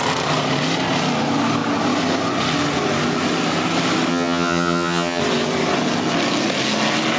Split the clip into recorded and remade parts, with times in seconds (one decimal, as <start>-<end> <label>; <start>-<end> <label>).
0.0-4.1 recorded; 4.1-5.2 remade; 5.2-7.2 recorded